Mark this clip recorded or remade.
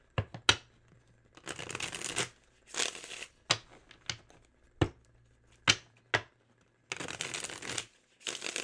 recorded